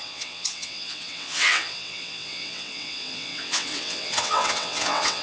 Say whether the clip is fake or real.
fake